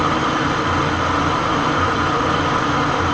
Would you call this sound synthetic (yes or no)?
no